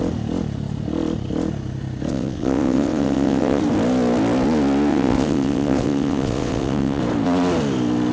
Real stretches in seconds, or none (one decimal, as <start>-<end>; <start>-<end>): 0.0-2.1; 3.6-4.9; 7.0-8.1